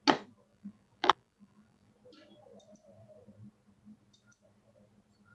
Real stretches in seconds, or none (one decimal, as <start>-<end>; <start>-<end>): 0.0-0.5; 1.9-5.3